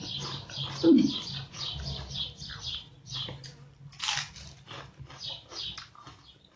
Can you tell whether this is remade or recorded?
remade